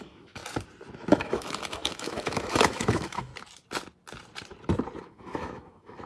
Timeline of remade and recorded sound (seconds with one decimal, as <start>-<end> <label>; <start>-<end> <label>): 0.0-0.4 remade; 0.4-1.1 recorded; 1.1-3.3 remade; 3.3-5.0 recorded; 5.0-6.1 remade